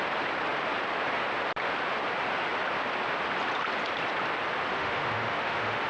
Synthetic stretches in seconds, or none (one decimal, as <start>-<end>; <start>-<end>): 4.7-5.9